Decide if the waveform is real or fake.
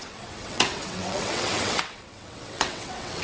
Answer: fake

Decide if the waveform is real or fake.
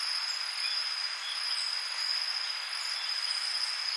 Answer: real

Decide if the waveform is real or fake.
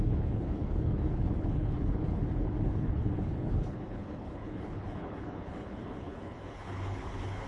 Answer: fake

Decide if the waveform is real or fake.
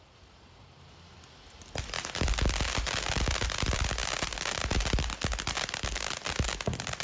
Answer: real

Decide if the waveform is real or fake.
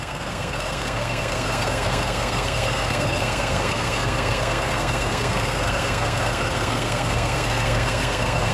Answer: fake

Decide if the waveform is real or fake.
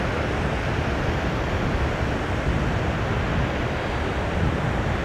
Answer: real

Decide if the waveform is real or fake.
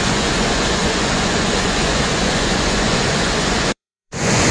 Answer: fake